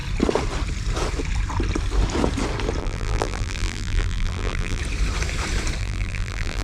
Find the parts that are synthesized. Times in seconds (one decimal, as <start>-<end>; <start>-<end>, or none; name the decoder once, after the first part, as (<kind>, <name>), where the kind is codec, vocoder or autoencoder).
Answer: 2.8-4.8 (vocoder, BigVGAN v2); 5.8-6.6